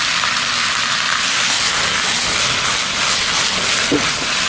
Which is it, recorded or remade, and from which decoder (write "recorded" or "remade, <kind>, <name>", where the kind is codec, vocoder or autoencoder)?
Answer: recorded